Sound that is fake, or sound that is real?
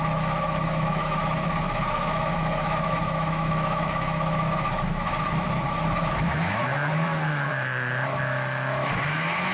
fake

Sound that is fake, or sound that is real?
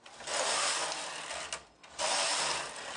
real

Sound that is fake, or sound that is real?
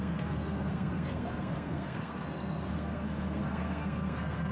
fake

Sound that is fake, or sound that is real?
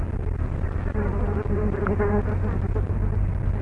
real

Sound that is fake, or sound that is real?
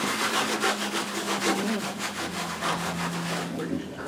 fake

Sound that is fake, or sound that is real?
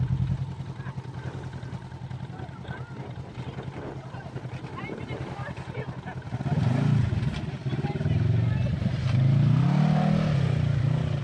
real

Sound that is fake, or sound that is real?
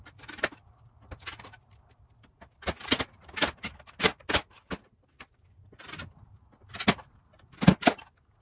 real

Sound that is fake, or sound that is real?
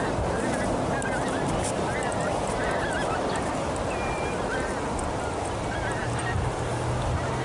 real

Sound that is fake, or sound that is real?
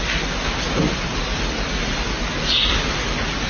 real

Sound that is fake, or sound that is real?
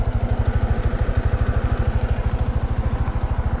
real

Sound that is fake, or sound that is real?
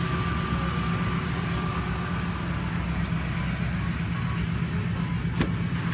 real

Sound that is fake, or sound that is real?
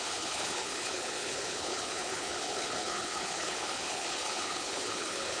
fake